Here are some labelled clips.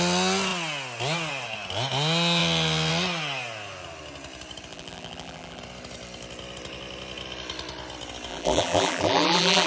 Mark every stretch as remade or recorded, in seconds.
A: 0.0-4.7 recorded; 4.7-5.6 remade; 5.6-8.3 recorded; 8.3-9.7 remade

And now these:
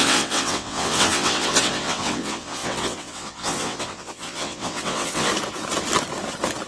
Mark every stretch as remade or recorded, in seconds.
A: 0.0-5.3 remade; 5.3-6.7 recorded

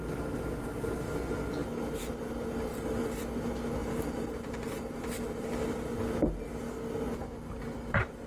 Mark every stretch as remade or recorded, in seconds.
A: 0.0-2.7 recorded; 2.7-3.2 remade; 3.2-3.8 recorded; 3.8-5.9 remade; 5.9-8.3 recorded

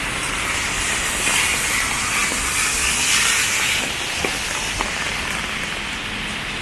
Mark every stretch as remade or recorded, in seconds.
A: 0.0-6.6 recorded